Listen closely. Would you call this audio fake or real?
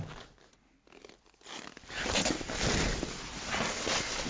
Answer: real